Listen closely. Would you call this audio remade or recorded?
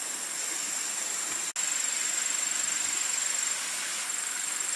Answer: recorded